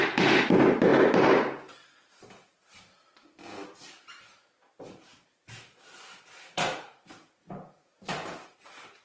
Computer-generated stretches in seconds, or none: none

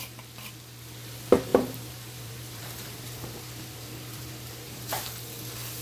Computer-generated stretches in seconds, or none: 1.5-5.0 (vocoder, BigVGAN v2)